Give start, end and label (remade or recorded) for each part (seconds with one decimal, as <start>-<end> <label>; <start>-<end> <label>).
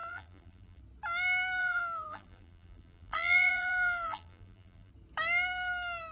0.0-0.8 remade; 0.8-1.6 recorded; 1.6-4.9 remade; 4.9-6.1 recorded